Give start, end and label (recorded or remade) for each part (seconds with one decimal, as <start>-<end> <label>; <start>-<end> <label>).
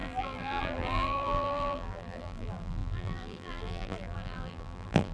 0.0-5.1 remade